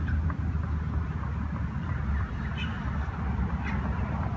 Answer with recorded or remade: recorded